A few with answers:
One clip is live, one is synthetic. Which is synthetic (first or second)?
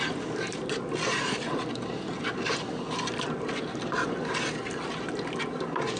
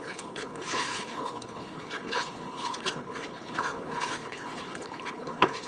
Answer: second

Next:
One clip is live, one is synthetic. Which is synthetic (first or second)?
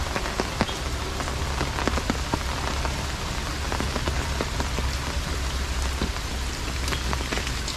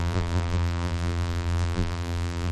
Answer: second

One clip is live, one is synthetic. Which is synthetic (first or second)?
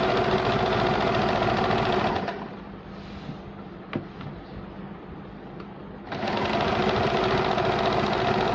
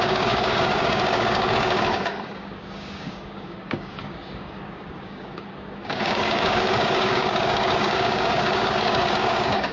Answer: second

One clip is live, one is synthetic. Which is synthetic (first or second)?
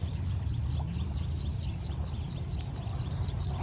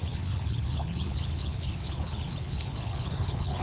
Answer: second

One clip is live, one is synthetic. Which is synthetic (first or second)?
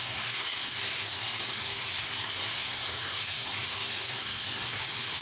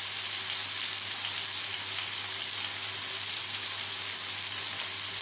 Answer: first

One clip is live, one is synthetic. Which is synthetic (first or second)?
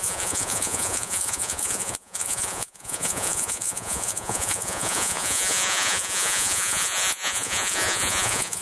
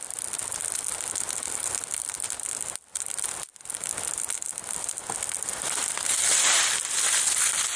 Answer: first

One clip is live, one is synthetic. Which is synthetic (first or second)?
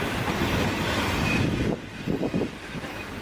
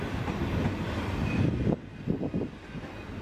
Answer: first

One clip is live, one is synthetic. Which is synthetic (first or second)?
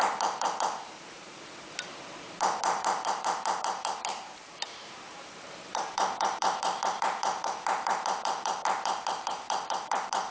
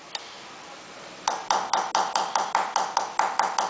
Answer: first